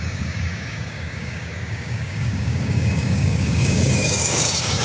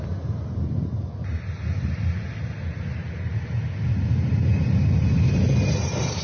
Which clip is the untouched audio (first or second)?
second